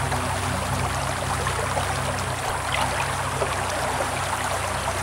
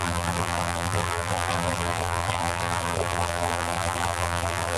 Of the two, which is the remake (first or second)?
second